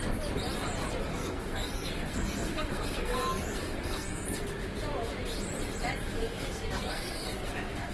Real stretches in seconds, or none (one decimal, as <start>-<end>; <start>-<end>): 0.0-1.1; 4.5-6.2